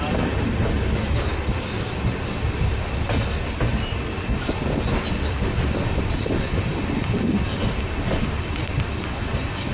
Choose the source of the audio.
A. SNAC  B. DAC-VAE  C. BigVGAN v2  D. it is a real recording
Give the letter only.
D